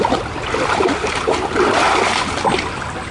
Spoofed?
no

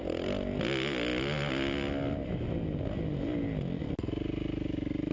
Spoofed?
no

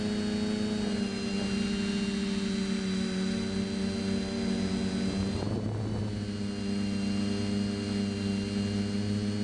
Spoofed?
no